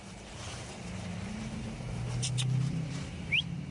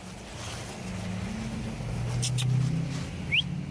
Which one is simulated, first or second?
first